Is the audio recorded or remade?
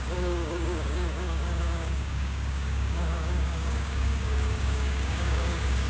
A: remade